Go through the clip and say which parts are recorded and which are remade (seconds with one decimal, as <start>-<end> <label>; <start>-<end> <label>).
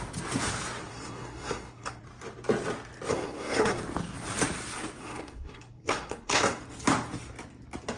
0.0-0.9 recorded; 0.9-2.0 remade; 2.0-3.1 recorded; 3.1-3.8 remade; 3.8-5.0 recorded; 5.0-6.6 remade; 6.6-8.0 recorded